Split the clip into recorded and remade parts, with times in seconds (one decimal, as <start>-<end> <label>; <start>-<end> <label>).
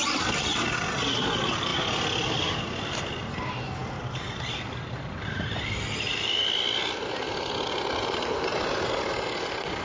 0.0-9.8 recorded